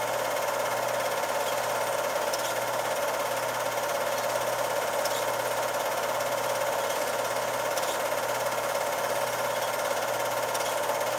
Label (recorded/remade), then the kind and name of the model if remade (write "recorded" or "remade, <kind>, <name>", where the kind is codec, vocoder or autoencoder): recorded